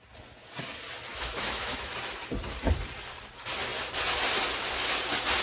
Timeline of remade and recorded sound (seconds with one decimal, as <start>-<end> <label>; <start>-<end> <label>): 0.0-1.1 recorded; 1.1-1.9 remade; 1.9-5.4 recorded